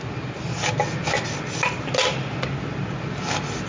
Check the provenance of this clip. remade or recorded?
recorded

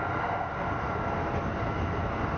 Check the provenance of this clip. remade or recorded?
recorded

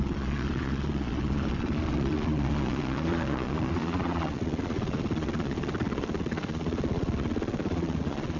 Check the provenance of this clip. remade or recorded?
remade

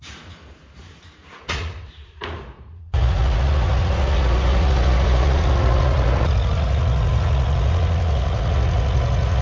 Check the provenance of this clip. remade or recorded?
remade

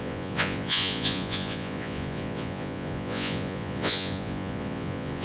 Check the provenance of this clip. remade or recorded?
remade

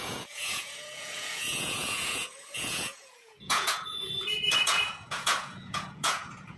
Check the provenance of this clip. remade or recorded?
remade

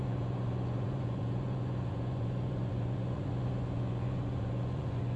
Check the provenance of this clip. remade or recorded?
remade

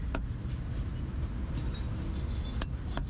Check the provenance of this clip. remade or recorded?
recorded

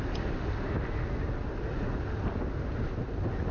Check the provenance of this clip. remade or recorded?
recorded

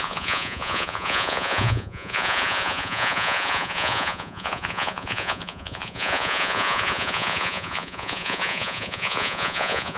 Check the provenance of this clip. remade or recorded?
remade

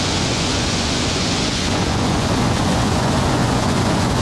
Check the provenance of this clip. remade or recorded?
remade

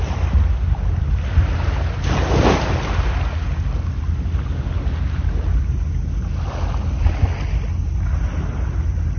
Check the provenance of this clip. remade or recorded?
recorded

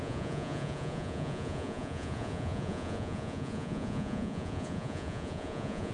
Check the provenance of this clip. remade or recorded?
remade